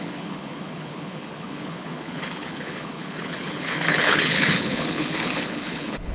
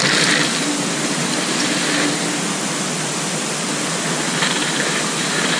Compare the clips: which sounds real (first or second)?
second